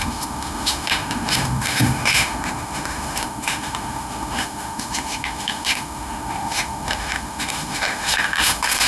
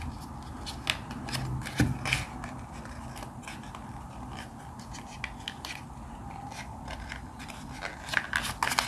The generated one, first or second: first